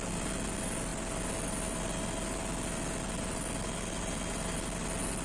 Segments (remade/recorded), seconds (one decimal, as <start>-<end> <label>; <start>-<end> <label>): 0.0-5.2 recorded